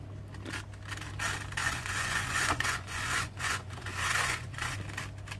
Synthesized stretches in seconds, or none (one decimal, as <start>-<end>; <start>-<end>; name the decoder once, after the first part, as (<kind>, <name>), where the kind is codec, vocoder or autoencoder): 1.6-4.8 (vocoder, Vocos)